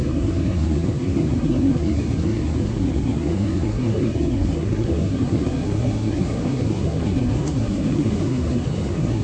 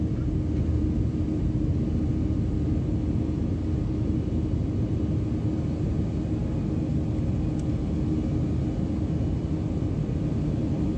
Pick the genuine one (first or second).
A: second